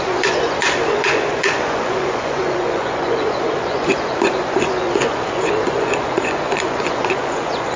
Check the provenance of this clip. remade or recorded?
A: remade